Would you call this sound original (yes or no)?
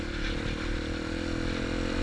yes